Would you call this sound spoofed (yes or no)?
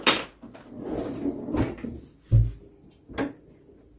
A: no